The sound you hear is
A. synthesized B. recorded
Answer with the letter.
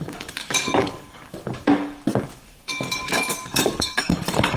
A